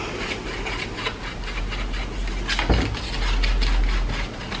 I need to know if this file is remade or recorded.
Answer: recorded